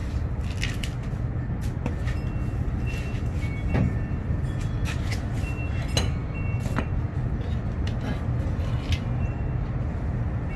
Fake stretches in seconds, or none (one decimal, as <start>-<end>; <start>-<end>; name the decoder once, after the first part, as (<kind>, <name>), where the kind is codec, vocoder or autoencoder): none